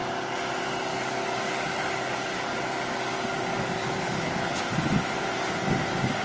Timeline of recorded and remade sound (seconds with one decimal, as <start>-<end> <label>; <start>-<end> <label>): 0.0-0.9 recorded; 0.9-4.6 remade; 4.6-6.2 recorded